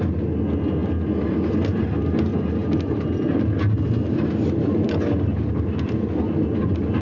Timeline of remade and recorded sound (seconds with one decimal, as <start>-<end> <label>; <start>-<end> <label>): 0.0-7.0 recorded